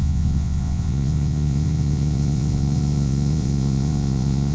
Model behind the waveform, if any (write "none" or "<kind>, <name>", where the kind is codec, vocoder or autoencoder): vocoder, Vocos